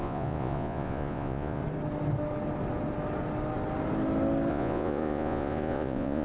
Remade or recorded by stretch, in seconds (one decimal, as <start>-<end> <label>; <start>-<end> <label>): 0.0-1.6 remade; 1.6-4.5 recorded; 4.5-6.2 remade